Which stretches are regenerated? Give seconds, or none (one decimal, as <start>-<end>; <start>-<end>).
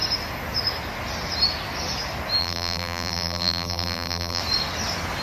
2.4-4.4